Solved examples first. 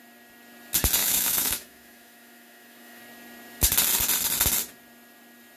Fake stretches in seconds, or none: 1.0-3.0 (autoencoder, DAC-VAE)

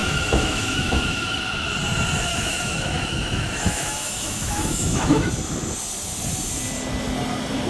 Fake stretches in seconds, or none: 0.0-1.4 (autoencoder, DAC-VAE); 2.3-5.3

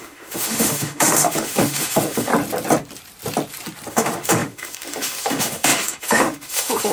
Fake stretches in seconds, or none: 0.0-2.3 (autoencoder, DAC-VAE); 3.9-6.9